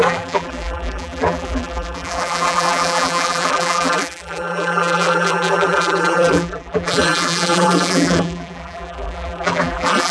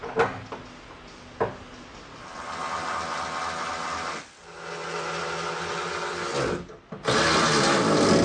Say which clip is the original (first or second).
second